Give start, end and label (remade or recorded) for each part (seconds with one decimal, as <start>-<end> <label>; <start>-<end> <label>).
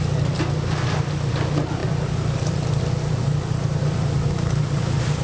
0.0-5.2 recorded